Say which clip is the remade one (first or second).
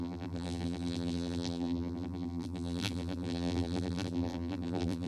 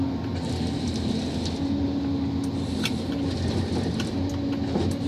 first